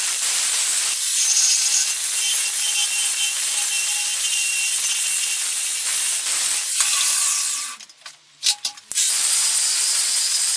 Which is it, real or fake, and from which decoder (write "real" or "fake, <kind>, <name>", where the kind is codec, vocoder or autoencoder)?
real